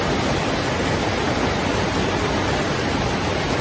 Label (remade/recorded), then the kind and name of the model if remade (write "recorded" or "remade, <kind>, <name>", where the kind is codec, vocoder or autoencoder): recorded